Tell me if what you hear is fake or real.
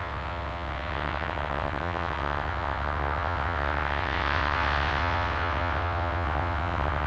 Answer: fake